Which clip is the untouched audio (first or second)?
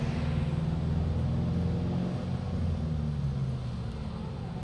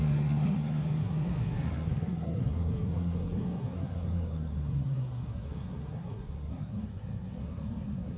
first